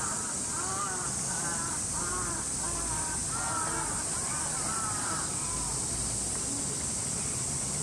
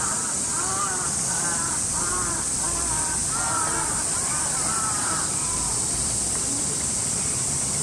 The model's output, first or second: second